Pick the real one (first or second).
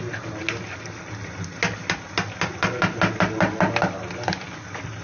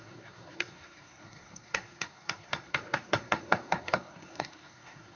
first